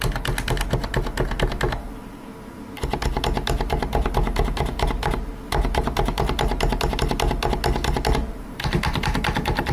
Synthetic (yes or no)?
no